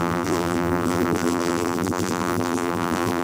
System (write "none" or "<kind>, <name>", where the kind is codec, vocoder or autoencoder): vocoder, BigVGAN v2